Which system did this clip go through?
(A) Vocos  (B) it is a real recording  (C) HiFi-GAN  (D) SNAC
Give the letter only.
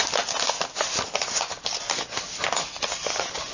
B